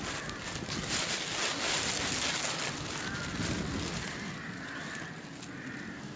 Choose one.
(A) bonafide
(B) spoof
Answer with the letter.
A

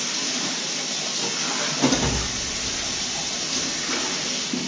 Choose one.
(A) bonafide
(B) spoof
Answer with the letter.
A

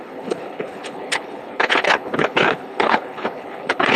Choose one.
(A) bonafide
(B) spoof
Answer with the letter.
B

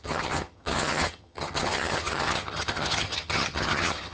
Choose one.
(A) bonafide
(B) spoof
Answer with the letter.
B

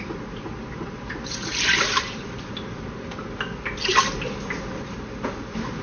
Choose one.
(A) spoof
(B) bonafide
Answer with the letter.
A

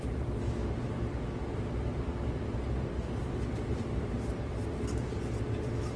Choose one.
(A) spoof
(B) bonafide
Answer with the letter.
B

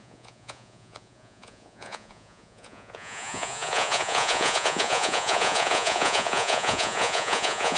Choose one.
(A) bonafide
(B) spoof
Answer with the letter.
B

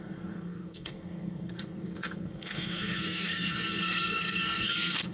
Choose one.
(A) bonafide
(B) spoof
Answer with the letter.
B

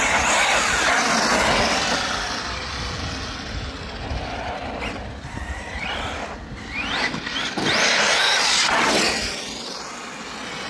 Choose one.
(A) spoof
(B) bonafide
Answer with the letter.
B